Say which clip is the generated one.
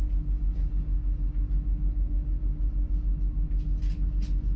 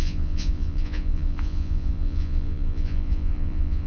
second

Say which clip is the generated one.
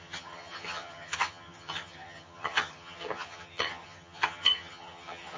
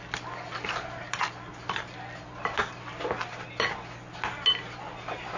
first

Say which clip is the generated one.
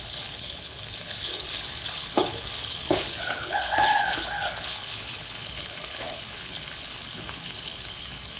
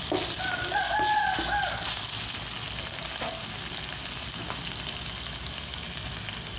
first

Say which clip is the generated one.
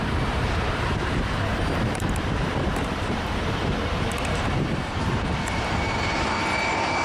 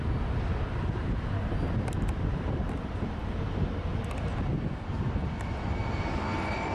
first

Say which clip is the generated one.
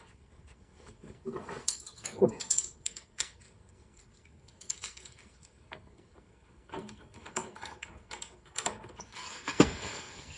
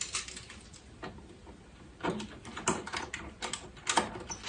first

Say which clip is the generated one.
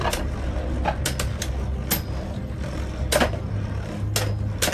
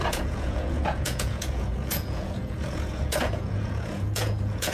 second